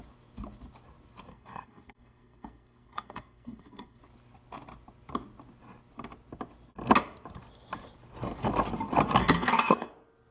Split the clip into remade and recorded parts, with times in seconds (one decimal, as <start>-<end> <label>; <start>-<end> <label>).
0.0-1.3 recorded; 1.3-4.0 remade; 4.0-9.2 recorded; 9.2-9.9 remade; 9.9-10.3 recorded